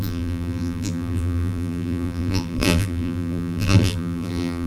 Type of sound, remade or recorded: remade